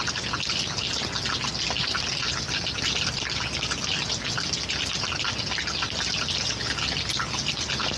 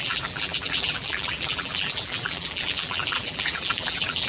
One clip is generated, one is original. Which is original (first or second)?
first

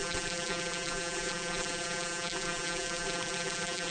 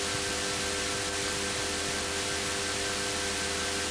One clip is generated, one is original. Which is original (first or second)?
second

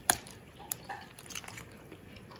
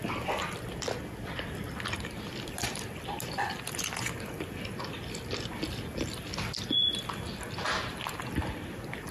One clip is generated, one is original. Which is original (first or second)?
second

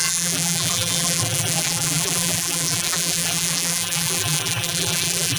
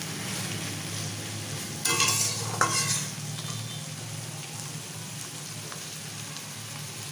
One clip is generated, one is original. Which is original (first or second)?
second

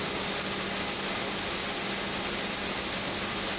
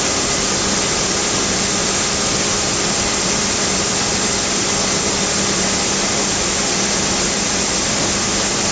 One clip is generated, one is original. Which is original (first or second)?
first